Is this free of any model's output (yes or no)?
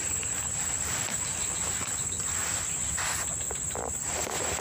yes